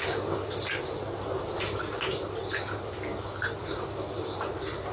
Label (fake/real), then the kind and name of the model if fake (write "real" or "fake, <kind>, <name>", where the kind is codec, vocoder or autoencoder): real